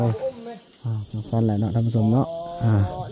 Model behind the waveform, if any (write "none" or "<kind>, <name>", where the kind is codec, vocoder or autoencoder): none